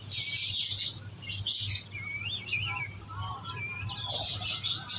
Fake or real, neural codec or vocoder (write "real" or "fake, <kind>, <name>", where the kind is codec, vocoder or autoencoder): real